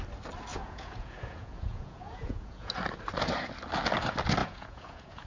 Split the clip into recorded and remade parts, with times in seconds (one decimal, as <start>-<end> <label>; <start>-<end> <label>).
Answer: 0.0-0.5 recorded; 0.5-2.7 remade; 2.7-4.4 recorded; 4.4-5.3 remade